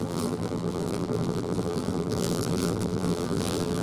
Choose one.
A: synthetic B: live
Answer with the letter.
A